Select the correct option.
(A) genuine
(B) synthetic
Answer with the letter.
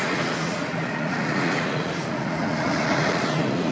B